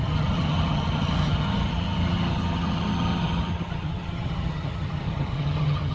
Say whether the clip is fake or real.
fake